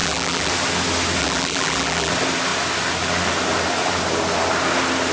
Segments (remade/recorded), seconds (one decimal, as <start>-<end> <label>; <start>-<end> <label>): 0.0-0.5 remade; 0.5-1.2 recorded; 1.2-2.1 remade; 2.1-5.1 recorded